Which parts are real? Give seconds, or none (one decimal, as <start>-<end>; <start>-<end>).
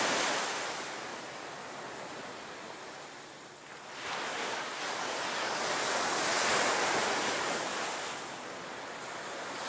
0.0-4.3; 5.6-9.7